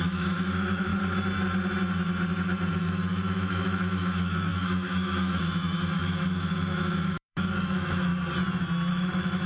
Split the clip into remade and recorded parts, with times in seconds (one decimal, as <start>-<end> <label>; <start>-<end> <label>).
0.0-0.9 remade; 0.9-2.7 recorded; 2.7-8.1 remade; 8.1-8.9 recorded; 8.9-9.5 remade